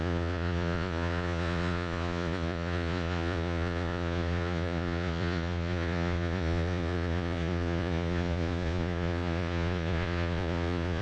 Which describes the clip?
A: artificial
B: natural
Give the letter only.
A